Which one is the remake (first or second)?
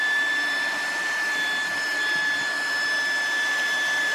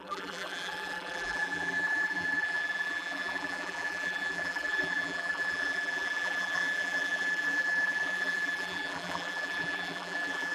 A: second